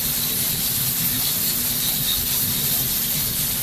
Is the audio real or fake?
fake